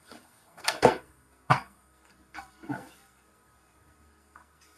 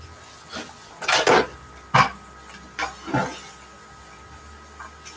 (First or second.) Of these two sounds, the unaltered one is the second